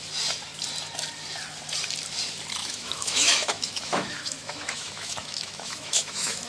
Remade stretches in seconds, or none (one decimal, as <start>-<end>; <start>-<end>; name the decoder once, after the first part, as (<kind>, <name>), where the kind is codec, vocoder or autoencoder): 2.6-6.5 (autoencoder, DAC-VAE)